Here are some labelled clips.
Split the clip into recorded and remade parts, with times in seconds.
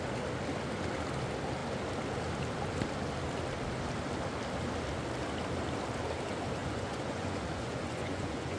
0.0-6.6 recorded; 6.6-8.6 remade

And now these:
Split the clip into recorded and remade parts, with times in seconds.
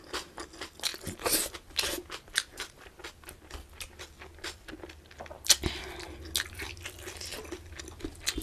0.0-8.4 recorded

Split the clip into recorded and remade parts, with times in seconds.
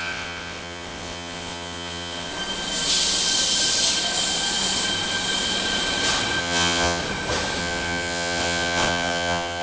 0.0-2.3 remade; 2.3-6.4 recorded; 6.4-7.0 remade; 7.0-7.6 recorded; 7.6-9.6 remade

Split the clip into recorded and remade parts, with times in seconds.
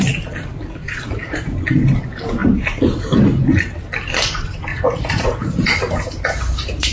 0.0-0.8 recorded; 0.8-1.5 remade; 1.5-4.7 recorded; 4.7-5.6 remade; 5.6-6.9 recorded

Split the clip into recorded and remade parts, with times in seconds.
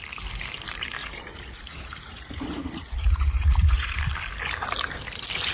0.0-1.0 recorded; 1.0-4.0 remade; 4.0-5.5 recorded